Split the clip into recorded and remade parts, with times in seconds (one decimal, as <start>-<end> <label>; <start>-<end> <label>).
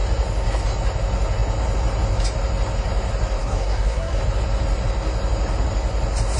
0.0-3.4 recorded; 3.4-4.2 remade; 4.2-6.4 recorded